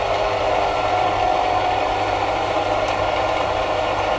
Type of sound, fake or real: fake